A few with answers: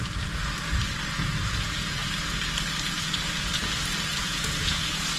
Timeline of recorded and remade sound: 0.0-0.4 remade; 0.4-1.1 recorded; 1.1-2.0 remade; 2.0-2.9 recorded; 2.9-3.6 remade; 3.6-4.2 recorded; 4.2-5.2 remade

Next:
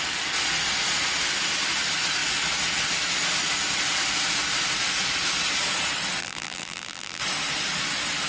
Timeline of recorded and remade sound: 0.0-6.2 recorded; 6.2-7.2 remade; 7.2-8.3 recorded

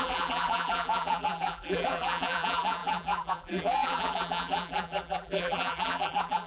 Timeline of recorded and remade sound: 0.0-6.5 remade

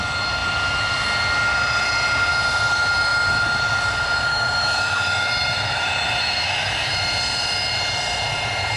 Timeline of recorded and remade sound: 0.0-4.3 recorded; 4.3-6.9 remade; 6.9-8.8 recorded